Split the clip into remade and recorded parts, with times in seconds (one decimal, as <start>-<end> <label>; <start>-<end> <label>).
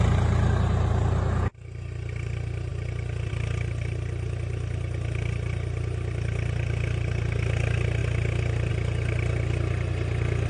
0.0-10.5 recorded